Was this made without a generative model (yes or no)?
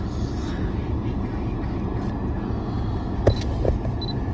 yes